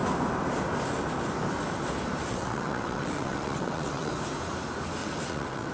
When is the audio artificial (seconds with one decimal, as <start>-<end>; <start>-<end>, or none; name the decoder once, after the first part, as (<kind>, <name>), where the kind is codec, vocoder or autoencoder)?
2.3-4.1 (vocoder, WaveNeXt); 5.0-5.7